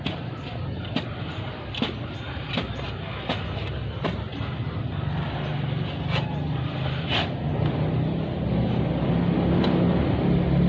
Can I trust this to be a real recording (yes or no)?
yes